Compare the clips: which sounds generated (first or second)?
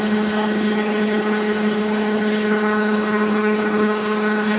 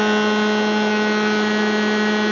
first